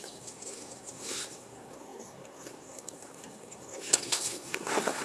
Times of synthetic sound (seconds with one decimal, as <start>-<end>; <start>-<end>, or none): 0.0-5.0